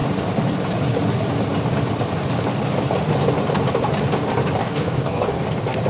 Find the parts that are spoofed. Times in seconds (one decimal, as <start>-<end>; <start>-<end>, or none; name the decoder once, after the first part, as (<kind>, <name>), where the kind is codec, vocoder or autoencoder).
4.6-5.4 (codec, DAC)